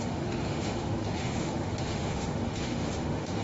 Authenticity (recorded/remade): remade